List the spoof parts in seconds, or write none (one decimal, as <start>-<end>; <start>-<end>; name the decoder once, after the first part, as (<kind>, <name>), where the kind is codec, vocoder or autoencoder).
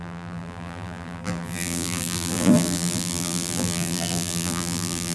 0.0-5.1 (vocoder, BigVGAN v2)